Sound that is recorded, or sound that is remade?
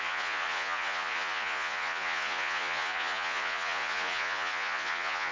remade